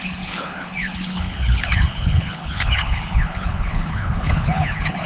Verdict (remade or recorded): remade